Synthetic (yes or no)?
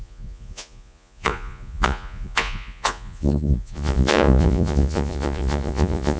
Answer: yes